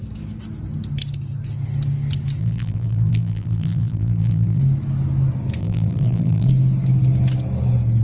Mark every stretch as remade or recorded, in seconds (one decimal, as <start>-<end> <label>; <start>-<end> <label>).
0.0-2.4 recorded; 2.4-4.6 remade; 4.6-5.6 recorded; 5.6-6.5 remade; 6.5-8.0 recorded